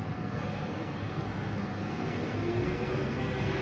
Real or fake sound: fake